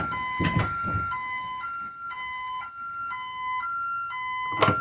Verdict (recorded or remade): recorded